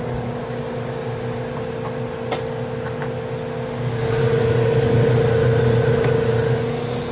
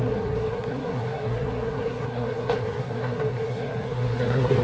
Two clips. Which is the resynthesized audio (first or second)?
second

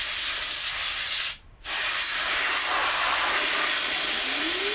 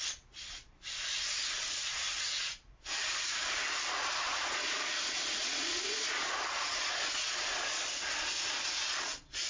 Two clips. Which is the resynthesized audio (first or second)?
second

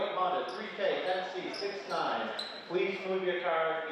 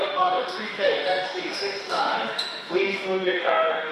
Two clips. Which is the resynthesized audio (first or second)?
second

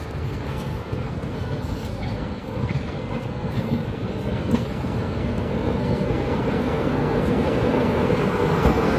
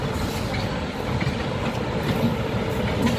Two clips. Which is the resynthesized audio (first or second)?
first